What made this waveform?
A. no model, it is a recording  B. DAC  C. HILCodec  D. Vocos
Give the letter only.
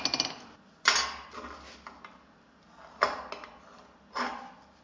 A